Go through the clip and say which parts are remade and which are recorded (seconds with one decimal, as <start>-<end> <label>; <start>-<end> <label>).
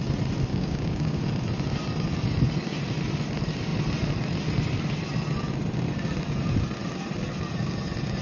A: 0.0-0.5 recorded; 0.5-1.2 remade; 1.2-8.2 recorded